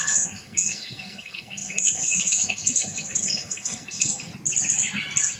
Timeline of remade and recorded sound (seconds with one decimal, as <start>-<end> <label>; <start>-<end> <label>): 0.0-4.3 remade; 4.3-5.4 recorded